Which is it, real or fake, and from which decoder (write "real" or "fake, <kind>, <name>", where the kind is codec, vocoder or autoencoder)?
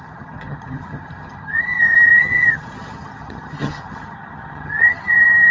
fake, vocoder, HiFi-GAN